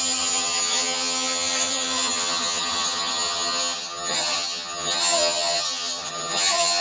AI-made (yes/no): yes